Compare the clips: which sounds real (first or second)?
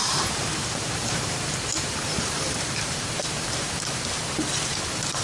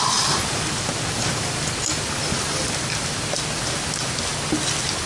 second